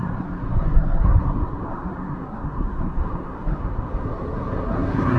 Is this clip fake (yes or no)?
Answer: yes